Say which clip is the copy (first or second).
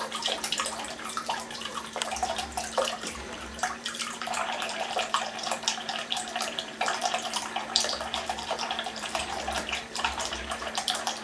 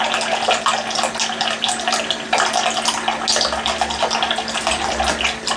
first